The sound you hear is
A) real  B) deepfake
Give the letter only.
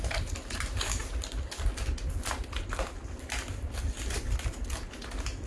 A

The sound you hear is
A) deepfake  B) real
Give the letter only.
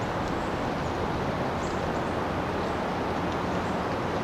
B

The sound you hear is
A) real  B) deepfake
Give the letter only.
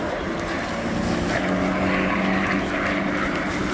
A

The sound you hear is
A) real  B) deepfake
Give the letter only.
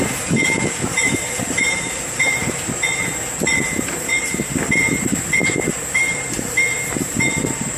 B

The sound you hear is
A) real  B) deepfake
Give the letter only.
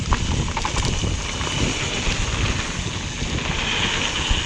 A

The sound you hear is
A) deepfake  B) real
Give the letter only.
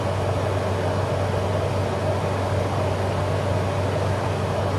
B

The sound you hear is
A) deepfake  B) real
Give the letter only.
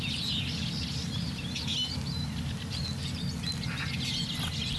B